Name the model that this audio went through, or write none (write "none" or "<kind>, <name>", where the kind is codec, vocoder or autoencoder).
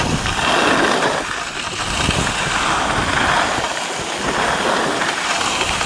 none